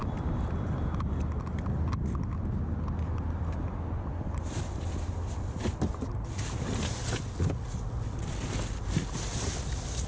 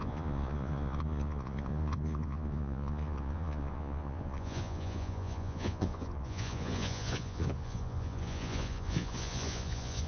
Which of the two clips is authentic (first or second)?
first